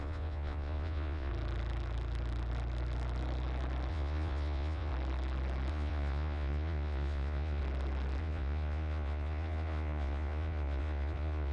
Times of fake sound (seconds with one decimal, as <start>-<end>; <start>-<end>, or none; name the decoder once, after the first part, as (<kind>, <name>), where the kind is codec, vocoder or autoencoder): 0.0-1.3 (vocoder, Vocos); 3.9-4.9; 5.7-7.6; 8.2-11.5